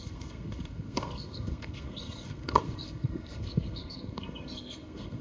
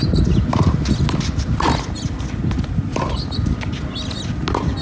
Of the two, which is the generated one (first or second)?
first